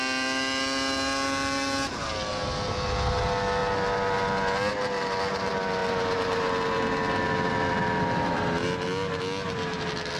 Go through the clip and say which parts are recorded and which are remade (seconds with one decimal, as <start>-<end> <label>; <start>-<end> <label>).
0.0-10.2 recorded